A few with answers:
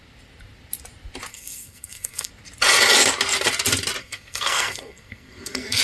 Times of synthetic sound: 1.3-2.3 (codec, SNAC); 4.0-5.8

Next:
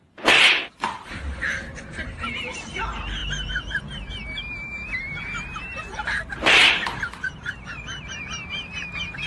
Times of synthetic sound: 0.0-9.3 (vocoder, BigVGAN v2)